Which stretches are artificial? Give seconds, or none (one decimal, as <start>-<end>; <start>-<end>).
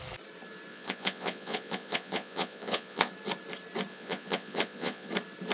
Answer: 0.7-3.1; 3.9-5.1